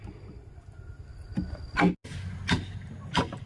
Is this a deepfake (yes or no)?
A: no